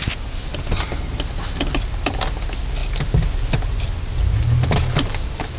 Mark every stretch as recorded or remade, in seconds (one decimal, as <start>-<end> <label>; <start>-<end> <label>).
0.0-5.6 recorded